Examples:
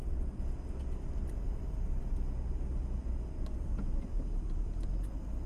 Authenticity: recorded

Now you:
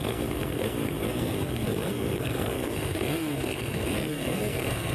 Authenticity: remade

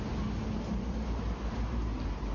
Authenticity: recorded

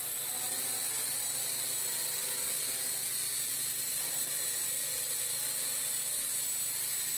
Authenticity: recorded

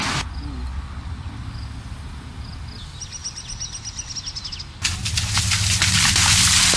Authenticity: recorded